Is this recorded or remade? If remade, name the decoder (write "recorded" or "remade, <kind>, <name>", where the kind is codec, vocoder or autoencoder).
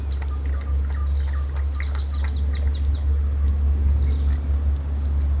recorded